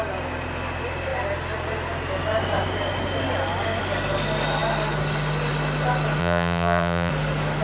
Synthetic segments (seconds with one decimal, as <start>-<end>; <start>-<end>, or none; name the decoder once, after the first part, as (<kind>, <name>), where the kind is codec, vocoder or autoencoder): 6.2-7.1 (vocoder, BigVGAN v2)